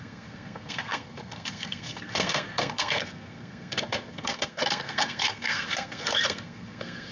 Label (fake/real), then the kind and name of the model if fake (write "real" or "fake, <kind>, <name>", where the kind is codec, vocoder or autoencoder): fake, codec, SNAC